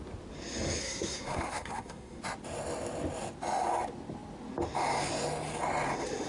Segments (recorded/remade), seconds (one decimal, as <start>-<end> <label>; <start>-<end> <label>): 0.0-0.8 recorded; 0.8-2.2 remade; 2.2-6.3 recorded